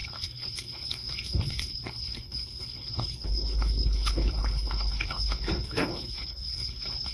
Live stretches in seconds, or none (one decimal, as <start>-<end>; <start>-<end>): none

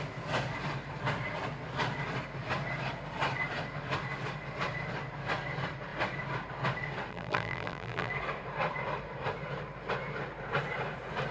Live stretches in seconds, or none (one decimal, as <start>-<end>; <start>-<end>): 0.0-7.1; 8.1-11.3

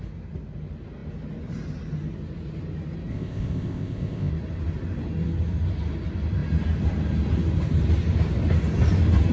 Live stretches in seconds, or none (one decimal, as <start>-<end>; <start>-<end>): 0.0-3.1; 4.3-9.3

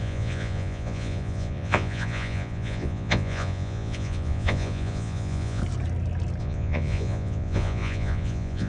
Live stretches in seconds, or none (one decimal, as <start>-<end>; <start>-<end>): 5.6-6.4